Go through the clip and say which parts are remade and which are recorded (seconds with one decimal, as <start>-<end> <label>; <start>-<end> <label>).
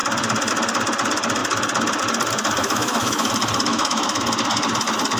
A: 0.0-2.6 recorded; 2.6-3.3 remade; 3.3-3.7 recorded; 3.7-4.2 remade; 4.2-5.2 recorded